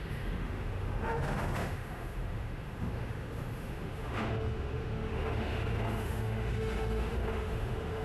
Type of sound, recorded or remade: remade